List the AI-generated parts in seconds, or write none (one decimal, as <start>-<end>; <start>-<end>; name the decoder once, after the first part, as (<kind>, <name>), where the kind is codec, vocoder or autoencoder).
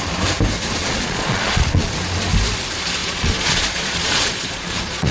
0.8-1.9 (vocoder, Vocos); 3.0-5.1